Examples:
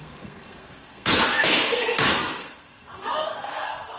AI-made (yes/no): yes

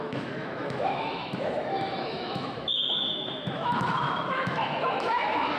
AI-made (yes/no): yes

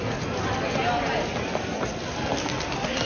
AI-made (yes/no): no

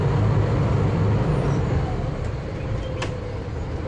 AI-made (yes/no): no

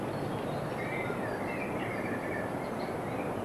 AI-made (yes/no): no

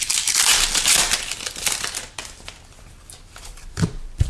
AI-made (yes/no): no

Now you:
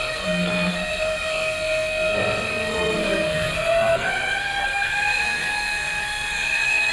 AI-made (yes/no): yes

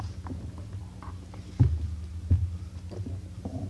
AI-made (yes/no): no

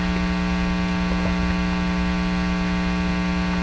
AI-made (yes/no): no